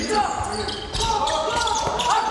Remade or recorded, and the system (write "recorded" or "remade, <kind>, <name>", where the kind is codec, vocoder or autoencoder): recorded